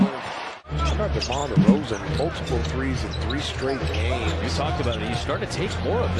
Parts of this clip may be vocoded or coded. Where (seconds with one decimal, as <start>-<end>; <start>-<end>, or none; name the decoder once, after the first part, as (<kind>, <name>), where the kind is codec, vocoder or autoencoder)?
none